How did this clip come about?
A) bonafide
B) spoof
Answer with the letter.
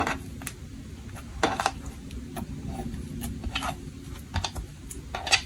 A